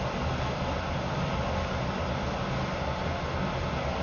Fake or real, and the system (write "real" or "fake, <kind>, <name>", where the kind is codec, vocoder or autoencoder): real